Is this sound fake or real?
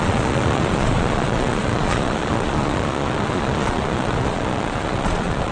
fake